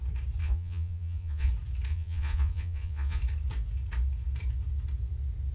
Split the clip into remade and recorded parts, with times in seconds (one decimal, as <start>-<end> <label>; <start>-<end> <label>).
0.0-0.4 recorded; 0.4-1.5 remade; 1.5-1.9 recorded; 1.9-3.2 remade; 3.2-5.5 recorded